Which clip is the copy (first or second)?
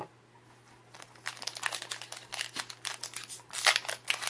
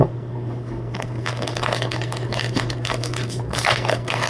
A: second